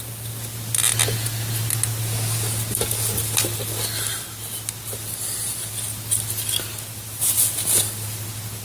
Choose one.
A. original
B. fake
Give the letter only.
A